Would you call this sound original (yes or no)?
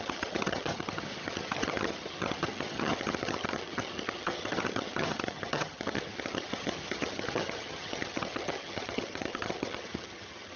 no